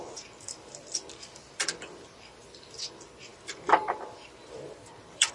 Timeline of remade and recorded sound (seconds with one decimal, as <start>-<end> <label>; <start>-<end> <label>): 0.0-3.3 remade; 3.3-4.0 recorded; 4.0-5.3 remade